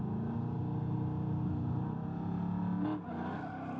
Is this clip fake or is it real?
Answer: real